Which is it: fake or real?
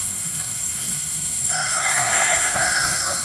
fake